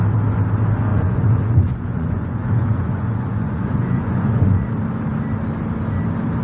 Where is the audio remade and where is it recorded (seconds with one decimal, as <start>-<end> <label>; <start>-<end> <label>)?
0.0-0.9 recorded; 0.9-4.7 remade; 4.7-6.4 recorded